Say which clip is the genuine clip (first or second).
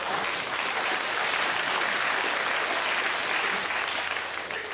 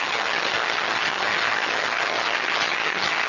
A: first